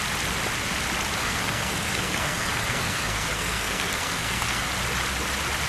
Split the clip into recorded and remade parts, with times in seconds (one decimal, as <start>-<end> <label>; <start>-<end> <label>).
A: 0.0-1.2 recorded; 1.2-4.6 remade; 4.6-5.7 recorded